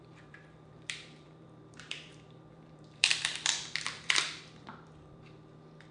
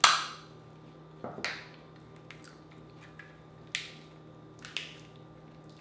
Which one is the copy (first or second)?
first